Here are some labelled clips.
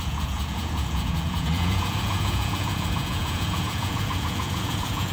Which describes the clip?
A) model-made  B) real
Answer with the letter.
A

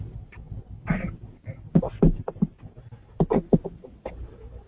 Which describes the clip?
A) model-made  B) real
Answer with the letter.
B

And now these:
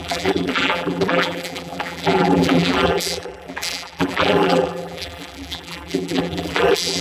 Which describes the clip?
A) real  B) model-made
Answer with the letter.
B